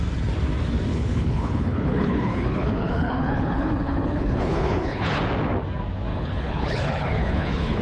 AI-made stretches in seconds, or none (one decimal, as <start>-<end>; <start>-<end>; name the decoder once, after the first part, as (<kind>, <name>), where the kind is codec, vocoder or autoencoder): 0.9-5.2 (codec, HILCodec); 6.1-7.8